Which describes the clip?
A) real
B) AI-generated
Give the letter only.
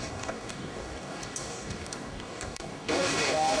B